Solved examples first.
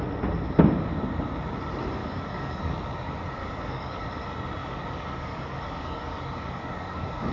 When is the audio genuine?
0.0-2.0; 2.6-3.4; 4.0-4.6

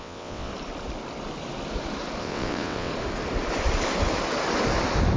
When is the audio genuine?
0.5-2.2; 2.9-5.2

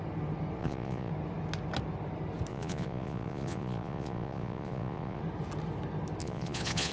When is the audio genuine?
0.0-0.6; 1.1-2.5; 5.2-6.2